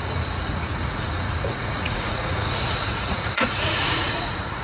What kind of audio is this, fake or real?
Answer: fake